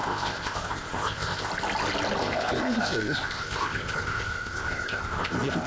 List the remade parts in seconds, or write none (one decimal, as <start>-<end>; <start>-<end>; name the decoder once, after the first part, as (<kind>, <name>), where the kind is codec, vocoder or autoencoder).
0.0-1.5 (codec, ZipCodec); 2.2-5.7